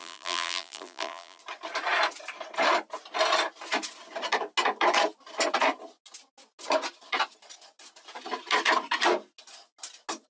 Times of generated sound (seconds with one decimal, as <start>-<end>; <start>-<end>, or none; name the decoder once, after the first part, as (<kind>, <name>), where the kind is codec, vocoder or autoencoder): 0.0-1.4 (vocoder, BigVGAN v2)